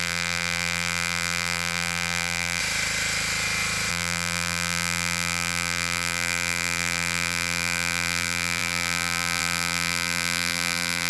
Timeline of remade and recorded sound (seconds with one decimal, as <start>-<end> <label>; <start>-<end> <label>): 0.0-2.6 remade; 2.6-3.9 recorded; 3.9-11.1 remade